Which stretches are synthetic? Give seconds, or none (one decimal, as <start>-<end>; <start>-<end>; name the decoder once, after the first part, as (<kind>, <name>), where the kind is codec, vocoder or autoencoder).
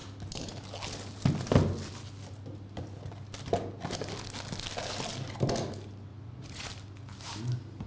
6.1-6.7 (vocoder, Vocos)